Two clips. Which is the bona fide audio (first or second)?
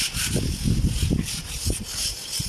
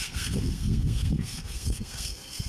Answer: first